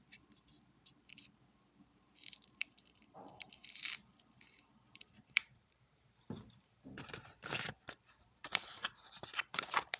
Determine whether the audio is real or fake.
fake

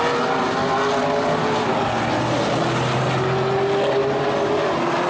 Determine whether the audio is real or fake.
real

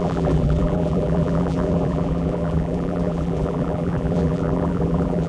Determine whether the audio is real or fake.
fake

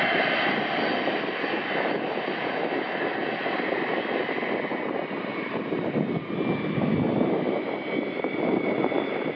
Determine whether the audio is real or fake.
real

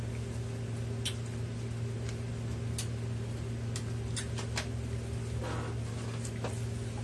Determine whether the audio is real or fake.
real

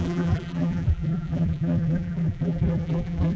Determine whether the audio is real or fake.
fake